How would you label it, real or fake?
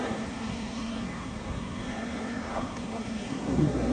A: fake